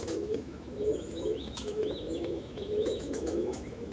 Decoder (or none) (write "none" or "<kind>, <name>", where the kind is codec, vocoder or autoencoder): autoencoder, DAC-VAE